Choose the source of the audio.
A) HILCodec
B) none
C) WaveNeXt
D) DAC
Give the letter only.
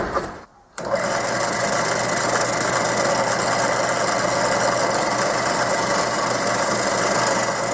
B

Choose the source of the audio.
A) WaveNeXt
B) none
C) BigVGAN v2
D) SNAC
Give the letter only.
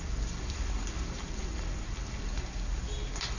B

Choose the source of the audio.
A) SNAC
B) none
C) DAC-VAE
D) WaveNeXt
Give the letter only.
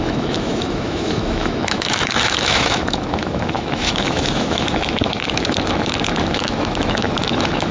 C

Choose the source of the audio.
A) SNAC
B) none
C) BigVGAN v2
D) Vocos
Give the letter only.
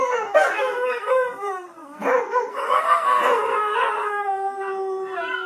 A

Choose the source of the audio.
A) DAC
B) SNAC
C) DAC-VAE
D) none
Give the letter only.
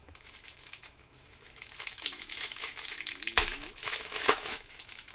C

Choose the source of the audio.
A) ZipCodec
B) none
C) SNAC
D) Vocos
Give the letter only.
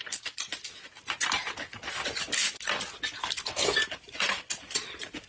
B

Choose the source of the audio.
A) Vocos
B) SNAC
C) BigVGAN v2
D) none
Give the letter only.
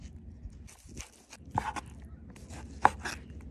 D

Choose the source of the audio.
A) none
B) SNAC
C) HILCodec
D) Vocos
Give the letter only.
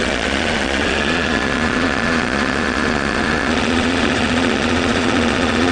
D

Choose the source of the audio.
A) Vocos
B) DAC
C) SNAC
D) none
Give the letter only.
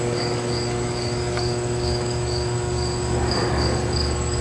B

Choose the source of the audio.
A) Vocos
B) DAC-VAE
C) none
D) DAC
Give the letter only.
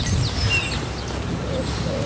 C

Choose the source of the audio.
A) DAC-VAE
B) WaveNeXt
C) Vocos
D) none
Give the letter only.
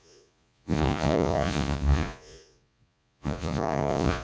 C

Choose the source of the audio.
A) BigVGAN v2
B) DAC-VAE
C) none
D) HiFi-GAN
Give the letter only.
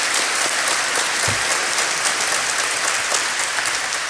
C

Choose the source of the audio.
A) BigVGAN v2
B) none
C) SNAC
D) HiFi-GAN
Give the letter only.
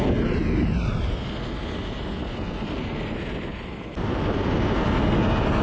B